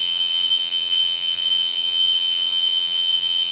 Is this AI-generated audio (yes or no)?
yes